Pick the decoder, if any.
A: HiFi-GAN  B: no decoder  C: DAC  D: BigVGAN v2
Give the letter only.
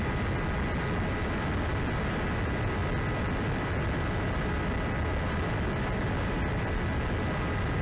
B